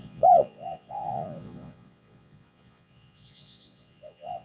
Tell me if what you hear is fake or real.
fake